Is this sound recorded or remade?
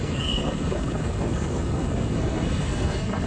remade